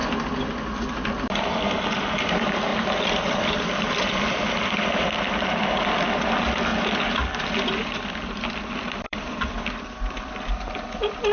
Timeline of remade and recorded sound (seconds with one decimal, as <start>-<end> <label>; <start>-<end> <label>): 0.0-2.7 recorded; 2.7-5.0 remade; 5.0-6.7 recorded; 6.7-10.3 remade; 10.3-11.3 recorded